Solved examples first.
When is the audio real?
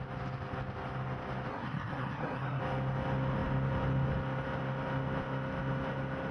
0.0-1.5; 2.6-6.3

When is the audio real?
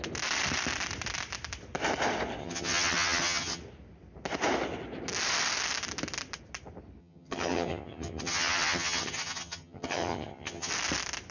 0.0-2.4; 3.6-7.0; 10.7-11.3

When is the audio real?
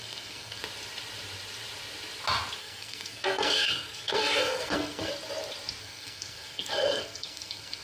0.6-2.6; 5.1-5.8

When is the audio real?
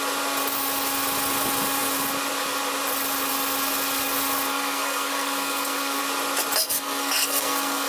0.0-4.5; 6.0-6.6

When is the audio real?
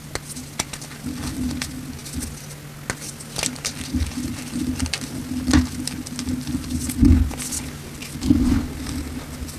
0.0-9.6